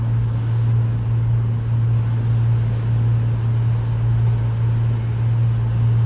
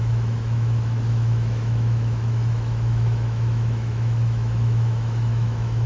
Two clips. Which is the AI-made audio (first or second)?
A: second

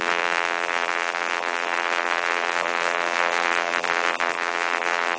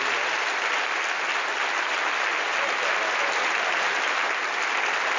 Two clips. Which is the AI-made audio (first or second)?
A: first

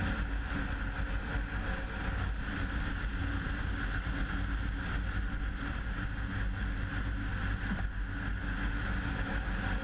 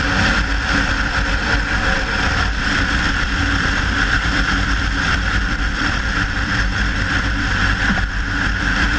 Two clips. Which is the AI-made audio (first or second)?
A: second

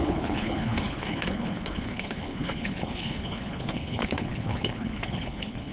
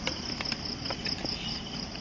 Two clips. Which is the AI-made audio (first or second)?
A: first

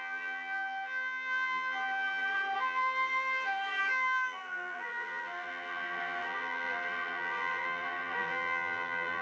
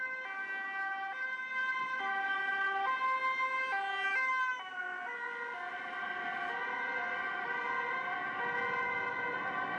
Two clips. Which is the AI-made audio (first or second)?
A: first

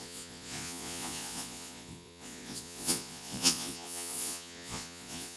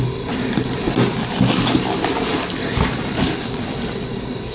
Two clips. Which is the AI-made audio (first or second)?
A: first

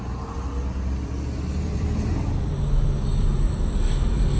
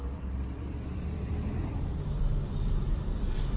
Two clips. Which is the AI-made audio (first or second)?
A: second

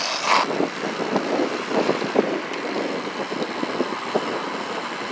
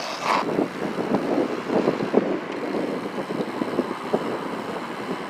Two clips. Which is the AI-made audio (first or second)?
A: first